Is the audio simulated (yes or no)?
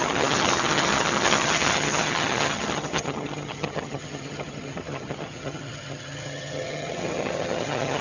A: yes